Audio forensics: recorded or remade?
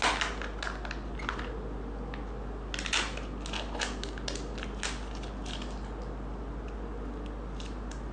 recorded